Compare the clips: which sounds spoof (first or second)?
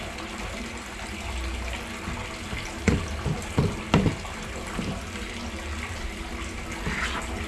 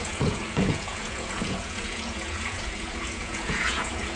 second